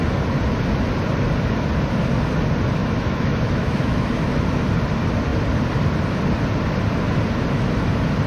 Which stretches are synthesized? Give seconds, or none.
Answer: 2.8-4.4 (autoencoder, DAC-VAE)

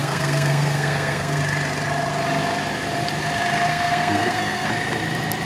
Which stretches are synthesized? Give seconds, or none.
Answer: 0.0-1.4 (codec, SNAC); 3.7-4.7

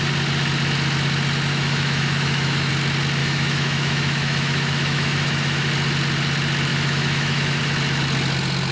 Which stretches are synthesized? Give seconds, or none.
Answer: 1.5-2.7 (autoencoder, DAC-VAE); 3.2-5.7; 6.7-7.6